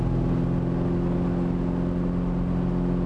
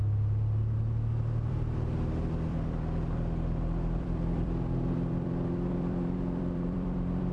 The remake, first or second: second